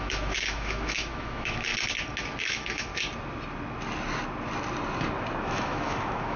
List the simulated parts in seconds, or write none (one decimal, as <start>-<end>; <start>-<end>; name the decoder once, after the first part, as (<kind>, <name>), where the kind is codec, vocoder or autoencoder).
0.0-1.7 (autoencoder, DAC-VAE); 2.4-2.9; 5.4-6.4